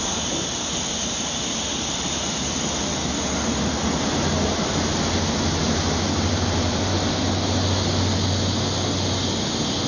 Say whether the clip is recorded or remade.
recorded